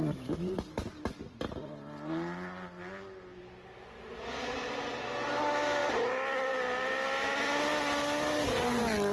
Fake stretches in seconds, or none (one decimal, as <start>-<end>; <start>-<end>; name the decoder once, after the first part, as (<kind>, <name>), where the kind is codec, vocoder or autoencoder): none